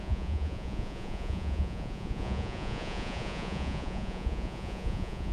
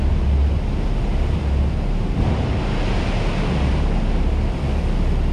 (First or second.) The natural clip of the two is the second